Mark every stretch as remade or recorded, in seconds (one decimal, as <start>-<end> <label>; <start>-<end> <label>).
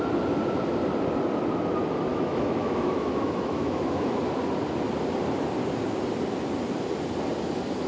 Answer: 0.0-2.1 recorded; 2.1-4.2 remade; 4.2-7.9 recorded